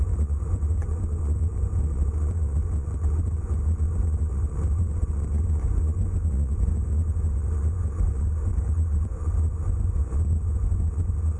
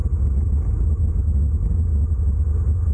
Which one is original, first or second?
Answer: second